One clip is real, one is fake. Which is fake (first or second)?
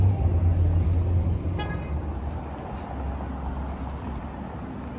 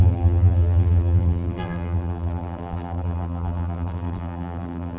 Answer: second